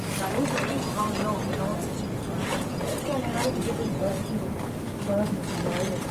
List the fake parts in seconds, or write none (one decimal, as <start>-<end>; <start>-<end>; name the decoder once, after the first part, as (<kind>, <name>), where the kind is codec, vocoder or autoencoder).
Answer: none